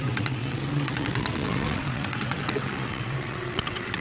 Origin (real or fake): fake